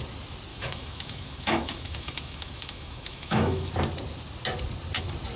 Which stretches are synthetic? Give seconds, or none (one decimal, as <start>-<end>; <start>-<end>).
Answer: 0.5-3.7